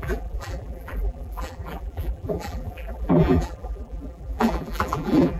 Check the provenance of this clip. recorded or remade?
remade